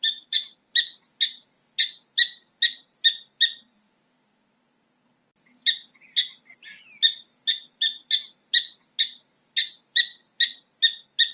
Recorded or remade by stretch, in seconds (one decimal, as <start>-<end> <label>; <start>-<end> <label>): 0.0-11.3 recorded